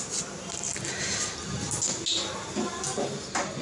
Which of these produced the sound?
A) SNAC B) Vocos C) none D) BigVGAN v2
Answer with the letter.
C